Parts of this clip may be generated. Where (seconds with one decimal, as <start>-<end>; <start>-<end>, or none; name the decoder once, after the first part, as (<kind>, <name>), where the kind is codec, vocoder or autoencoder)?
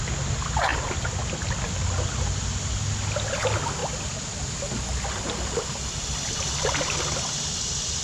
none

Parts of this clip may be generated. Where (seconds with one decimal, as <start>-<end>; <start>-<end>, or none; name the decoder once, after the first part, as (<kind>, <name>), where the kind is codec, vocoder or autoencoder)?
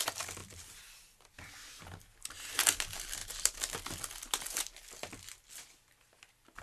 0.4-1.2 (vocoder, BigVGAN v2)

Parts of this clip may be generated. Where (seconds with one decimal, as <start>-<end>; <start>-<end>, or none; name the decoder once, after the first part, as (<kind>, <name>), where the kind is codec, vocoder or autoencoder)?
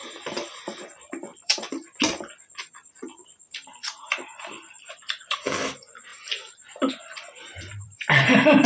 0.0-6.1 (vocoder, BigVGAN v2); 6.9-8.7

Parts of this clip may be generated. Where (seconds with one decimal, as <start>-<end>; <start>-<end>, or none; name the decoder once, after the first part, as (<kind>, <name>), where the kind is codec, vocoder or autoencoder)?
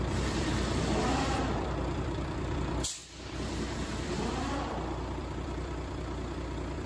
0.0-6.9 (vocoder, BigVGAN v2)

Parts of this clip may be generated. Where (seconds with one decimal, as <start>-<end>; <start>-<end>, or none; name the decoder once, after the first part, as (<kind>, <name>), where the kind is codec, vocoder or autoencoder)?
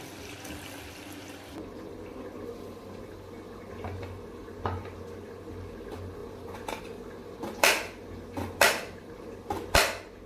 6.2-6.8 (vocoder, BigVGAN v2)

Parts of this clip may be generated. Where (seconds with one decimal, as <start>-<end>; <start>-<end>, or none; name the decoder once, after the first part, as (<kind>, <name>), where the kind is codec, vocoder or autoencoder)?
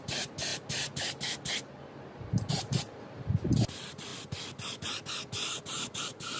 0.0-0.5 (vocoder, BigVGAN v2); 2.5-4.1; 5.8-6.4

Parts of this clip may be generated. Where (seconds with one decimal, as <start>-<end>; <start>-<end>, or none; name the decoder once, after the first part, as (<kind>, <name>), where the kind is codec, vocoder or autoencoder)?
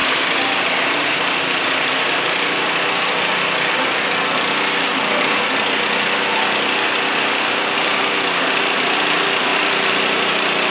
9.5-10.7 (vocoder, BigVGAN v2)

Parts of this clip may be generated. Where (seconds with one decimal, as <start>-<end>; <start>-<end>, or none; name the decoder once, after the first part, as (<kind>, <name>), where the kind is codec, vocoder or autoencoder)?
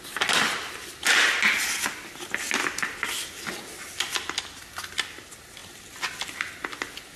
none